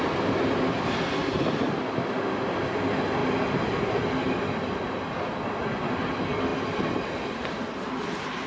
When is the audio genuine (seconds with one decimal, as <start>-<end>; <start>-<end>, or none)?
0.0-8.5